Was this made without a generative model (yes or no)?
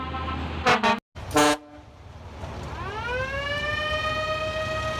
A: yes